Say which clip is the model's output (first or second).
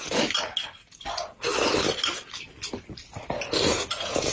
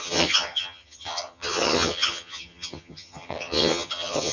second